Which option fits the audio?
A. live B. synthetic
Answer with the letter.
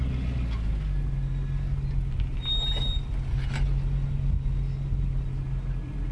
A